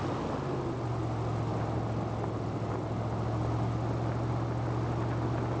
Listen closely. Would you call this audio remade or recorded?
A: recorded